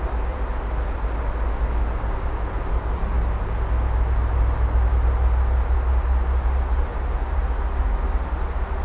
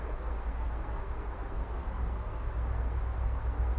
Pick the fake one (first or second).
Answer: second